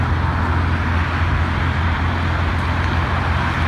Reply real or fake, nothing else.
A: real